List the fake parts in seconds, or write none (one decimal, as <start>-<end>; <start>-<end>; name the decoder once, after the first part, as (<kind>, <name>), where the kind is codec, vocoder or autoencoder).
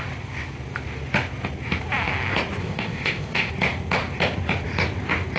2.6-3.5 (codec, ZipCodec)